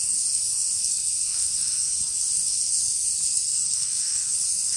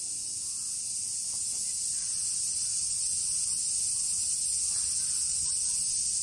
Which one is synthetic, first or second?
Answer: first